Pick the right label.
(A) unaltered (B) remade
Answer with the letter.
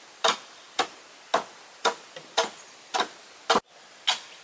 A